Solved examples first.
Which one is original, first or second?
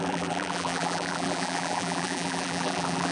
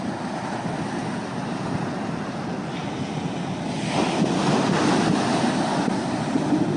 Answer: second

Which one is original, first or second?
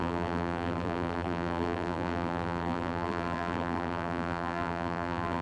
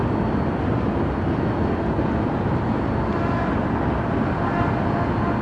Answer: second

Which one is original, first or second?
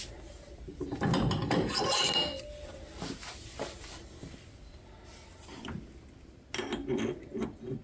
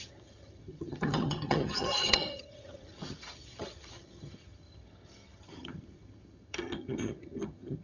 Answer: first